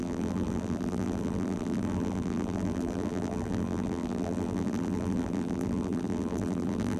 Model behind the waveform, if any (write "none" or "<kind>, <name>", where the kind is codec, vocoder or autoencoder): vocoder, BigVGAN v2